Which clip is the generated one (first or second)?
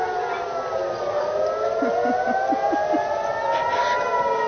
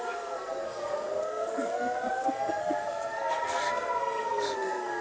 second